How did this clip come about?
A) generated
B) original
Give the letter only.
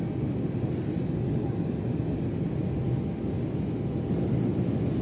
B